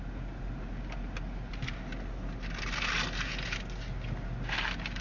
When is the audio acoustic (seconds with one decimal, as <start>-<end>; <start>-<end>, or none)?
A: 0.0-5.0